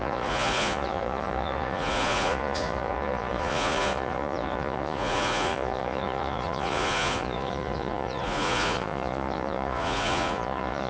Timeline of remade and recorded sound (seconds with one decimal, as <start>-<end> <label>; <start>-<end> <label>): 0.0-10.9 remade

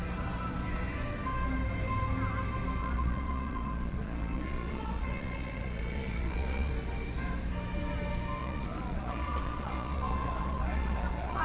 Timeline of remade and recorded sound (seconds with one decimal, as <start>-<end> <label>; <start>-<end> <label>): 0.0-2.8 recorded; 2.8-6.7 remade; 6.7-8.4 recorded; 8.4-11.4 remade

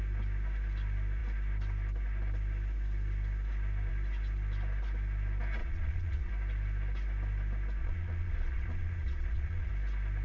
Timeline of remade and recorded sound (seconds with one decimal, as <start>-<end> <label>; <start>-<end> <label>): 0.0-5.6 recorded; 5.6-6.3 remade; 6.3-7.8 recorded; 7.8-9.7 remade; 9.7-10.2 recorded